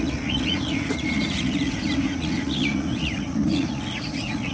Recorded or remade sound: remade